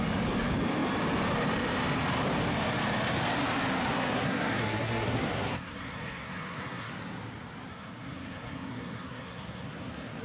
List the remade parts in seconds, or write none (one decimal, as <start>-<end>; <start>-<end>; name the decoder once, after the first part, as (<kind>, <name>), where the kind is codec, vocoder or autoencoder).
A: 3.9-6.9 (codec, SNAC); 7.7-10.2